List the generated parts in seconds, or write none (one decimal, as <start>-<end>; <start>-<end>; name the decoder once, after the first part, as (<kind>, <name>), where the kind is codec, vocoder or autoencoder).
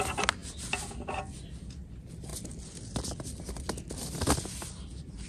none